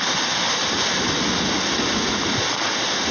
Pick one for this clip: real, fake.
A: real